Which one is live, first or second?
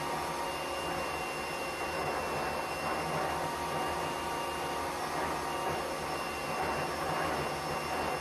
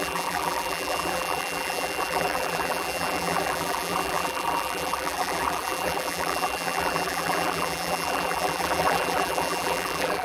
first